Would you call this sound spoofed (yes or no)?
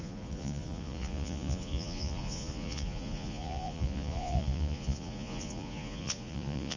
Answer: yes